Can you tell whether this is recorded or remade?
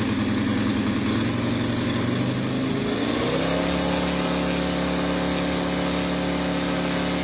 recorded